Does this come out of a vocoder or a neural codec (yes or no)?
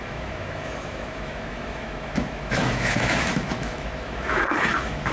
yes